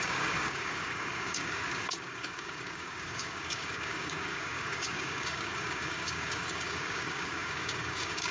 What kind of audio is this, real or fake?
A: fake